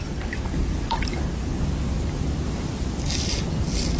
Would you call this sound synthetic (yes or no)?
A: no